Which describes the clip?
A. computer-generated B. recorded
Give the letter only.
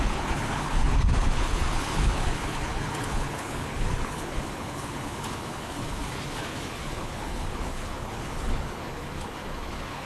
A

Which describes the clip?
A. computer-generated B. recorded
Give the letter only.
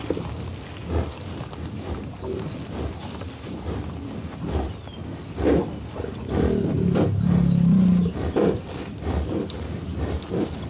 B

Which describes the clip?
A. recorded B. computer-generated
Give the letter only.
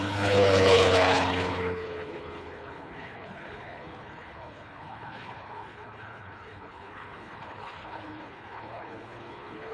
B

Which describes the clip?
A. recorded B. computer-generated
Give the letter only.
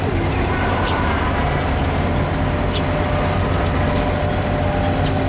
A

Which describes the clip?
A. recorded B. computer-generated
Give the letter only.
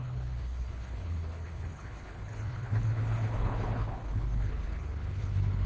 B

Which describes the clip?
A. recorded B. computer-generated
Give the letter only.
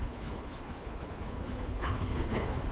B